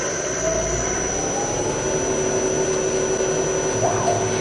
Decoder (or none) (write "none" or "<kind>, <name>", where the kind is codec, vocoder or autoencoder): none